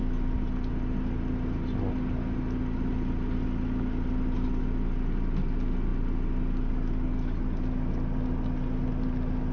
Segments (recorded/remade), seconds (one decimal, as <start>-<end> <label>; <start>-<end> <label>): 0.0-9.5 recorded